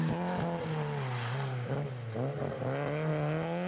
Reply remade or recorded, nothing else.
recorded